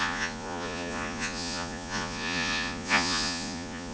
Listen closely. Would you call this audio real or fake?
fake